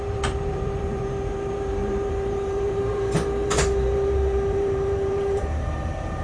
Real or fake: fake